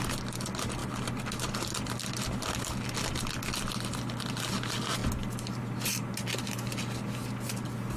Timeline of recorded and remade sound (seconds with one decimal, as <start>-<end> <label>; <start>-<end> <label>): 0.0-8.0 recorded